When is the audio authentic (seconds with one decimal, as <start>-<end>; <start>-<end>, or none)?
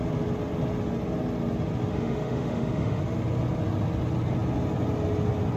0.0-1.9; 3.0-5.6